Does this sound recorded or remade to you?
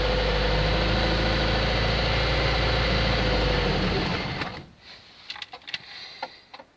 recorded